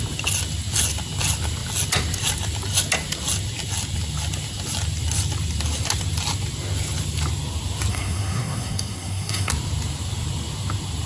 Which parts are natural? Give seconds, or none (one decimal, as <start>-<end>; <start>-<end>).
0.0-7.9; 9.5-11.1